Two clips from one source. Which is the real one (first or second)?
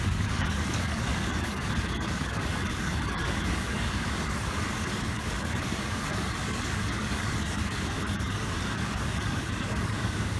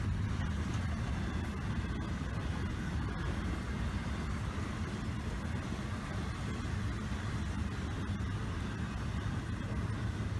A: second